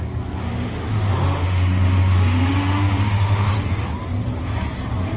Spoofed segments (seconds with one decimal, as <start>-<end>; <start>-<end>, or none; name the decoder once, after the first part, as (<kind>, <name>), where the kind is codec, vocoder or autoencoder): 0.4-3.5 (autoencoder, DAC-VAE)